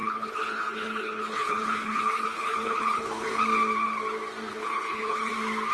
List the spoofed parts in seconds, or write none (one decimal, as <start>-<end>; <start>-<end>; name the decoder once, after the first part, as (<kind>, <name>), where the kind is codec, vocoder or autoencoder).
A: 0.0-3.4 (codec, HILCodec); 4.5-5.3